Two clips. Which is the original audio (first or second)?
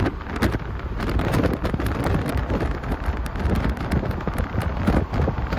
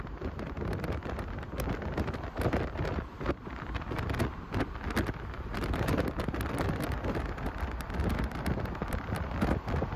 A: second